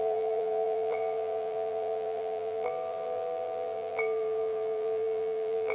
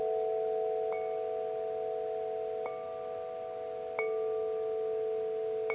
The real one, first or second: second